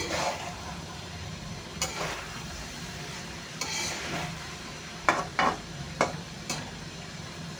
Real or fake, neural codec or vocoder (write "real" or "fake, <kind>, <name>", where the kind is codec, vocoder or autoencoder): fake, vocoder, BigVGAN v2